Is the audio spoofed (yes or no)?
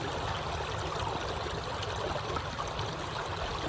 no